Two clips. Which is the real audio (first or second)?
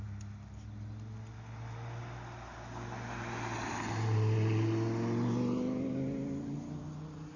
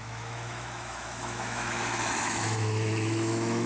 first